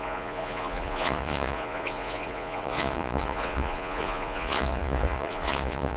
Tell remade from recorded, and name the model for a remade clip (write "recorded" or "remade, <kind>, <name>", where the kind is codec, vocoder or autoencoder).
remade, vocoder, Vocos